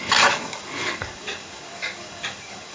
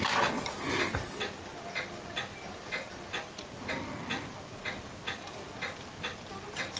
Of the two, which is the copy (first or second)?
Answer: first